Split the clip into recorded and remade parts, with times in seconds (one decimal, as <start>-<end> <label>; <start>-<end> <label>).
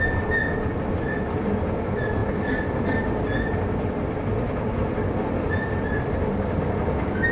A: 0.0-7.3 recorded